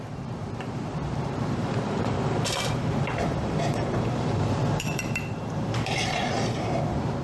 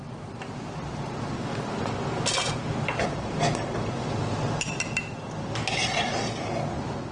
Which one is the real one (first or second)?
second